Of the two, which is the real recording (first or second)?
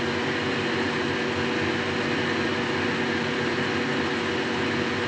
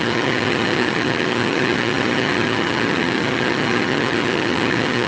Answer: first